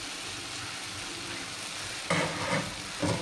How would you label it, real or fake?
real